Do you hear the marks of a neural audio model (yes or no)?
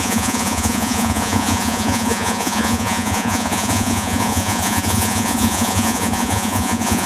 yes